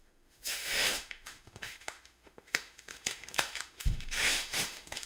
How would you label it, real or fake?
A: fake